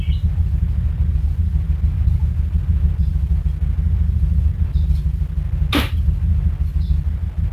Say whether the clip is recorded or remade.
recorded